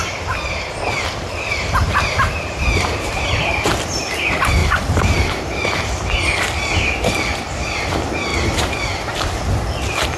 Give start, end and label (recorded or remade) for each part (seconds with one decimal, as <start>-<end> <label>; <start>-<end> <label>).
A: 0.0-1.8 recorded; 1.8-3.3 remade; 3.3-4.6 recorded; 4.6-5.4 remade; 5.4-10.2 recorded